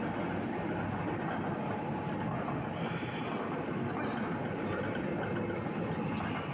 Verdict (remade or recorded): recorded